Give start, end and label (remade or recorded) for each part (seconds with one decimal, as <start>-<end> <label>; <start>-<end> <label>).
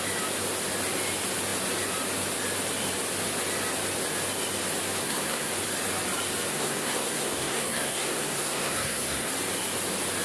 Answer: 0.0-5.0 recorded; 5.0-5.5 remade; 5.5-6.5 recorded; 6.5-9.3 remade; 9.3-10.2 recorded